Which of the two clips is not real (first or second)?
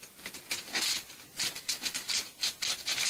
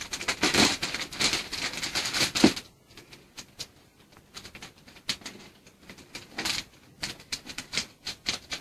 second